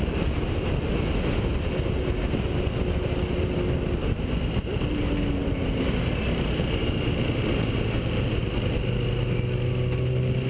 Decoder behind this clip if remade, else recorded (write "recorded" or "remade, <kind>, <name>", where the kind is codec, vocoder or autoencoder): recorded